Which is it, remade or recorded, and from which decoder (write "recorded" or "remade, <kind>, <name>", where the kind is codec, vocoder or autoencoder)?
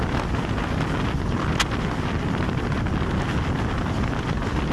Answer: recorded